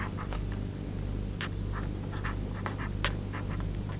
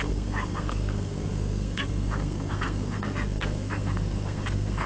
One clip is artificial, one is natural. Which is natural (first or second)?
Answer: first